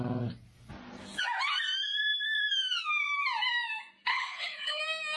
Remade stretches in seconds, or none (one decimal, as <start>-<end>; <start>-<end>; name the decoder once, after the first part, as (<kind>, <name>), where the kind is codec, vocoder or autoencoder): 4.1-4.8 (codec, HILCodec)